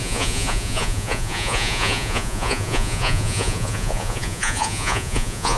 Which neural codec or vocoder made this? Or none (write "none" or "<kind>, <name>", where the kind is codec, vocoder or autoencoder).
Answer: vocoder, Vocos